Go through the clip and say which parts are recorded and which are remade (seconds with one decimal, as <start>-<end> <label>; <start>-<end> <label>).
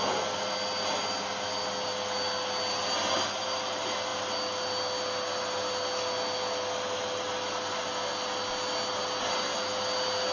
0.0-10.3 recorded